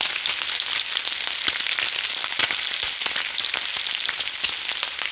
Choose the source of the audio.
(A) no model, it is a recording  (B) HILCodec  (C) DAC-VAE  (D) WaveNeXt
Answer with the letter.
A